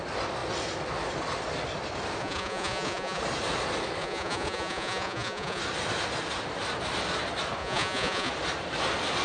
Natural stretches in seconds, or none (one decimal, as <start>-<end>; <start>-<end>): 0.0-2.2; 3.2-4.0; 5.6-7.6; 8.3-9.2